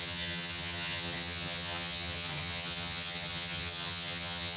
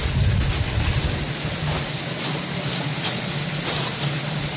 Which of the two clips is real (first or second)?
second